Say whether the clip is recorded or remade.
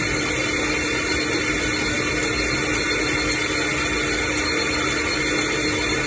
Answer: recorded